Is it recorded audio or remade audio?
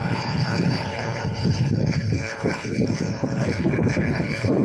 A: remade